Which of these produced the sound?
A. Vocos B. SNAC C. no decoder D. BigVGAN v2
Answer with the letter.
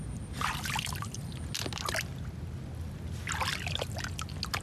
C